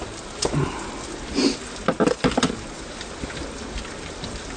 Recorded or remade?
recorded